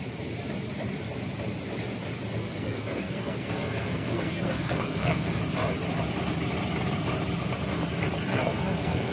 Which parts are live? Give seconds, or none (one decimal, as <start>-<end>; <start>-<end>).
0.0-2.4; 5.4-8.3